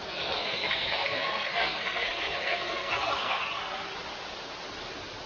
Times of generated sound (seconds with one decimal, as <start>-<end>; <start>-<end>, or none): 0.0-3.4